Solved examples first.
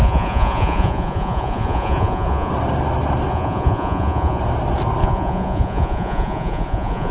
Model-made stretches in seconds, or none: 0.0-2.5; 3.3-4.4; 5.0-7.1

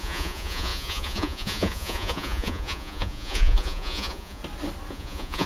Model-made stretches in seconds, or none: 0.0-4.4; 4.9-5.5